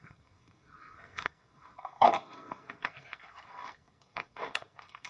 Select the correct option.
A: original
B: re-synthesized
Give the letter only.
B